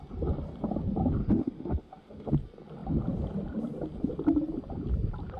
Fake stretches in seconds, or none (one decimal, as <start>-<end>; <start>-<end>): 1.2-2.3